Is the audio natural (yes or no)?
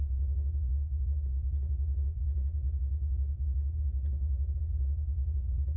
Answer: yes